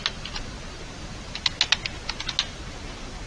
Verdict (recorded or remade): recorded